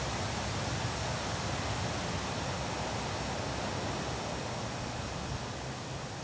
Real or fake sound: real